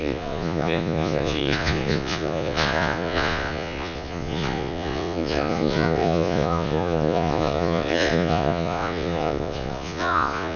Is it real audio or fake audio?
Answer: fake